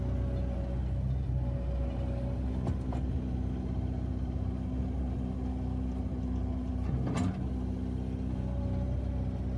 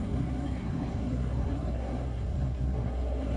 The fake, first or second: second